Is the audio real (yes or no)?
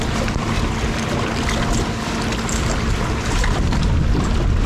yes